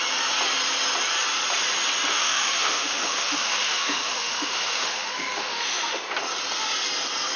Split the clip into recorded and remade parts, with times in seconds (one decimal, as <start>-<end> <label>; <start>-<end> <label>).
0.0-2.1 recorded; 2.1-6.0 remade; 6.0-7.4 recorded